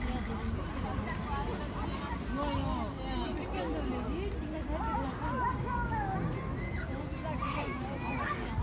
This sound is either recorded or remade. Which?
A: recorded